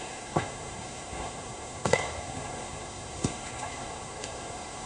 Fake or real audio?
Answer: fake